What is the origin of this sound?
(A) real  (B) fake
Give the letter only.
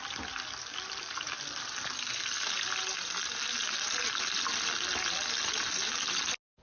A